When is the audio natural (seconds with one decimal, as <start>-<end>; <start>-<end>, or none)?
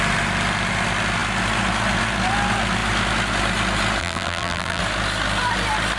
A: 0.0-4.0; 4.8-6.0